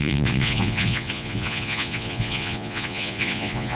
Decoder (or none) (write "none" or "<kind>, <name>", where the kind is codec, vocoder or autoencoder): vocoder, Vocos